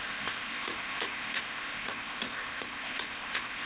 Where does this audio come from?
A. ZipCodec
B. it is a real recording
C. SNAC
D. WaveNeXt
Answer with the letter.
A